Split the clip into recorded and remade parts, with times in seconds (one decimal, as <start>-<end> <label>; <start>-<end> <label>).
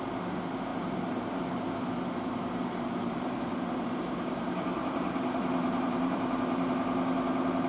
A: 0.0-0.7 recorded; 0.7-1.7 remade; 1.7-3.0 recorded; 3.0-6.7 remade; 6.7-7.7 recorded